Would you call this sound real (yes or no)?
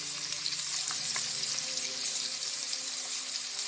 no